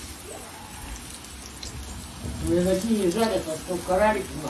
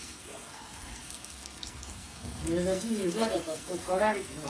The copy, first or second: second